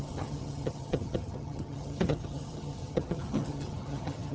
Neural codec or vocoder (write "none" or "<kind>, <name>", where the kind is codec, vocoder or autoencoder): vocoder, HiFi-GAN